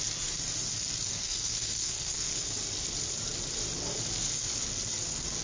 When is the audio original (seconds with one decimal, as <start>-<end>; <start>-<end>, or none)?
0.0-1.1; 2.3-5.4